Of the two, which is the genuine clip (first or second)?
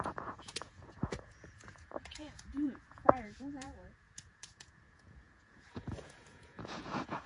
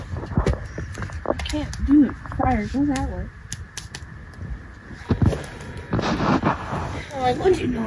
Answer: second